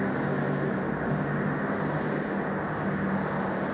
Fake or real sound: real